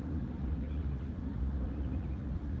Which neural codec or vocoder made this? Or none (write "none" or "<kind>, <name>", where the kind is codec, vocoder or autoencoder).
vocoder, Vocos